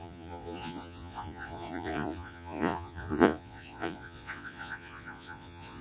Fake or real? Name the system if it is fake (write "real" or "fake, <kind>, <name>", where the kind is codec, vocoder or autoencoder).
fake, vocoder, Vocos